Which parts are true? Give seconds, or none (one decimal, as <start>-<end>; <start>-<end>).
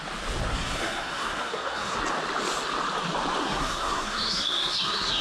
0.0-0.5; 2.0-3.4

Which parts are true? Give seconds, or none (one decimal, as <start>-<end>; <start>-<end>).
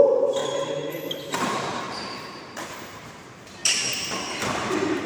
3.6-4.2